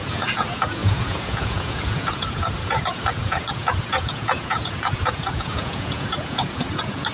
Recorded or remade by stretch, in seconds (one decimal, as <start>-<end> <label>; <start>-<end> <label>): 0.0-7.1 remade